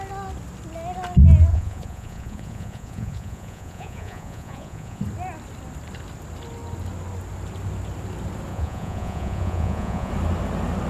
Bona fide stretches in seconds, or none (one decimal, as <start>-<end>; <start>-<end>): 0.0-1.5; 5.0-8.5; 10.1-10.9